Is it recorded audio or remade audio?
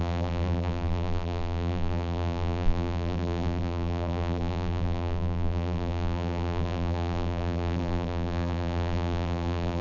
remade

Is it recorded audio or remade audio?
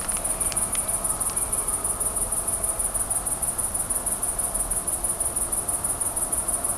recorded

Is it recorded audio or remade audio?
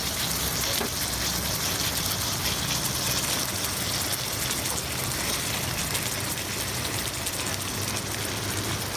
recorded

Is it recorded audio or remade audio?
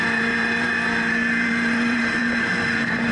remade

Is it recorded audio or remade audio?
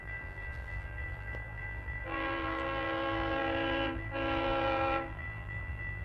remade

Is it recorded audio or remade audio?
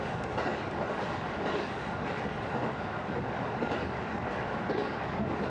remade